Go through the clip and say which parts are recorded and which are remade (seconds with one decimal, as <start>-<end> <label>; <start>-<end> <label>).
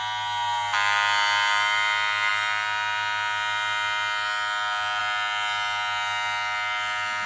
0.0-7.3 recorded